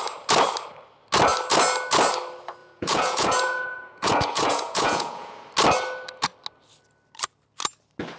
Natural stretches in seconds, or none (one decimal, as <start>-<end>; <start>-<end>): 0.0-2.6; 5.5-8.2